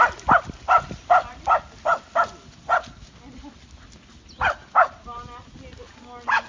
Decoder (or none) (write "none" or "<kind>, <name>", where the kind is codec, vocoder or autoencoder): none